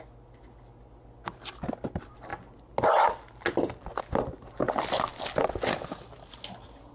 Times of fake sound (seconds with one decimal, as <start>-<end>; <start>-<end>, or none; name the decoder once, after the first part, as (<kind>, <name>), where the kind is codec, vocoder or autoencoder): none